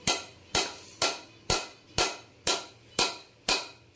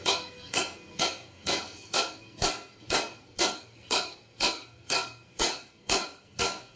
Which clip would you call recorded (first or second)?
first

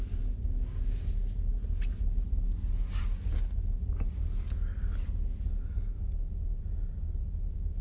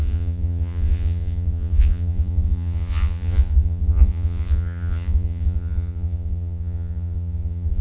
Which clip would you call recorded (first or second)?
first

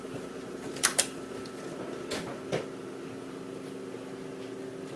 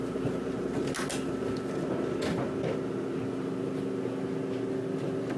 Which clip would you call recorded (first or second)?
second